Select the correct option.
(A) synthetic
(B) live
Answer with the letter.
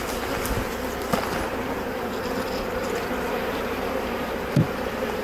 B